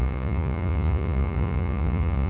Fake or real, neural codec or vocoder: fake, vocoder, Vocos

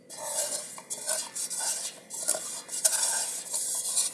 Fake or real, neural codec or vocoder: real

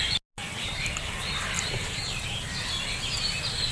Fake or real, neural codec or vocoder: real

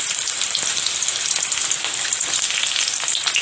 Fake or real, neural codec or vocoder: real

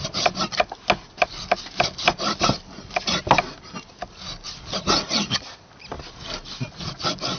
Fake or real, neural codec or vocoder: real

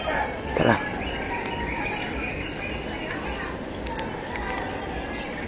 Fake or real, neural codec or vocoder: real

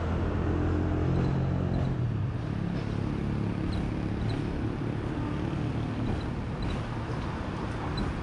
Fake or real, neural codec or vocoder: real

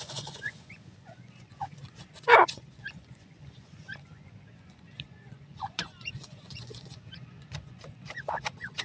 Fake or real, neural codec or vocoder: fake, vocoder, Vocos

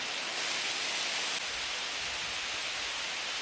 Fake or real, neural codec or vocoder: real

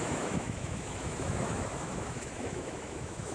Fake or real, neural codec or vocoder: fake, autoencoder, DAC-VAE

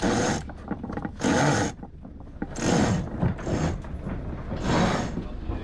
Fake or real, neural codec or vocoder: real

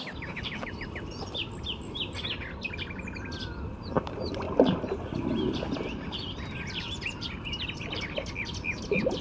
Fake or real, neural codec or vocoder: real